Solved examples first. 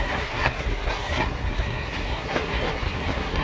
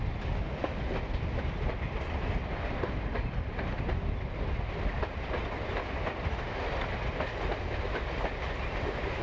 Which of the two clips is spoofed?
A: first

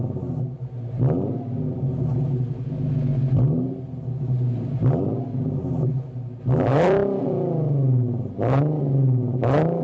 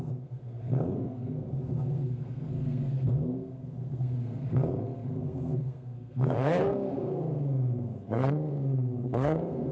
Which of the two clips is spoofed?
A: second